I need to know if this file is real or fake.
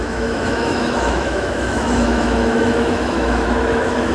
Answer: fake